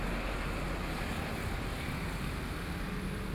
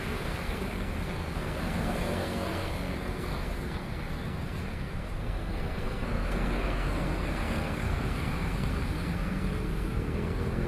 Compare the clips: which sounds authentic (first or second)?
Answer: first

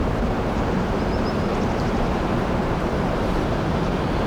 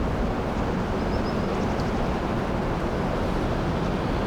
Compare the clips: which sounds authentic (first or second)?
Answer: second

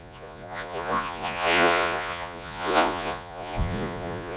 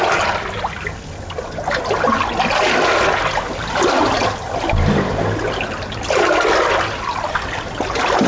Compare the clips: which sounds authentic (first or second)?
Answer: second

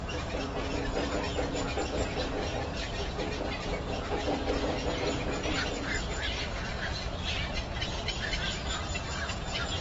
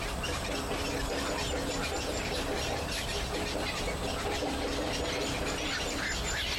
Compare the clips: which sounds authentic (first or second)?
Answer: second